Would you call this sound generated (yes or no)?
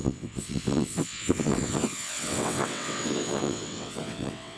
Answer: yes